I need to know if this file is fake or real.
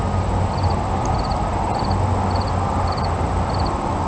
real